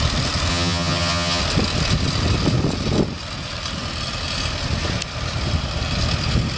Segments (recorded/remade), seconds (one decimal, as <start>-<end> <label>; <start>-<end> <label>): 0.0-0.5 recorded; 0.5-1.4 remade; 1.4-6.6 recorded